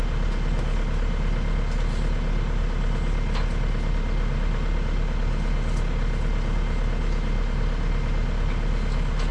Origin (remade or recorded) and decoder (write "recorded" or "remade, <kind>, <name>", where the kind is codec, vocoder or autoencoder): recorded